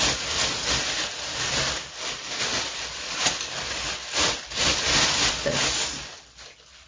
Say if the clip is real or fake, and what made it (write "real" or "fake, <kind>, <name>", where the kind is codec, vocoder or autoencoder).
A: real